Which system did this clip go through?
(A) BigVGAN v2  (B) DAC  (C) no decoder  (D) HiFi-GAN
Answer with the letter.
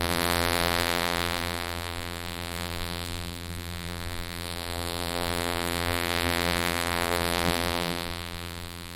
A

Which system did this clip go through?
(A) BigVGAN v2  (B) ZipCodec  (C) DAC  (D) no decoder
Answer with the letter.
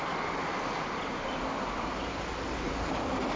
D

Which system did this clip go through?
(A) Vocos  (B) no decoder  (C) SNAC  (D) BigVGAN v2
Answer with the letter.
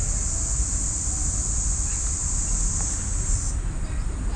B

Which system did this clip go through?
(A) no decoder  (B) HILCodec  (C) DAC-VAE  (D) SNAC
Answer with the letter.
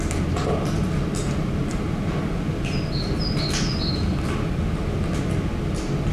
A